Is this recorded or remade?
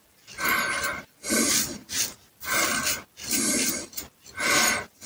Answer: remade